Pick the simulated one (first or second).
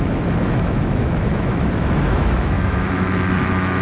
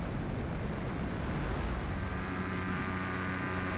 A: first